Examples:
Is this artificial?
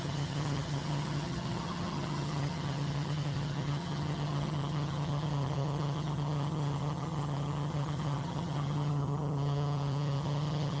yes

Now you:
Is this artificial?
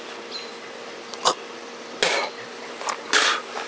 no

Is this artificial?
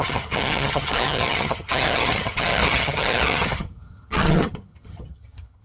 yes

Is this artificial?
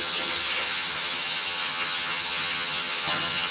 yes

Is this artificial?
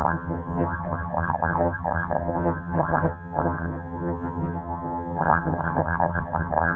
yes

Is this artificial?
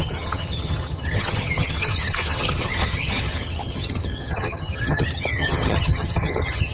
yes